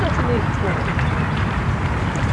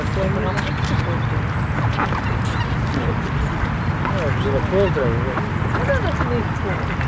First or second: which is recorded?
second